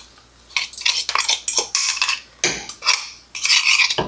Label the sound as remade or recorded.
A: recorded